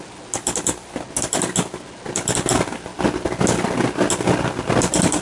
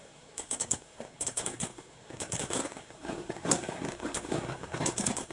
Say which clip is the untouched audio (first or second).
first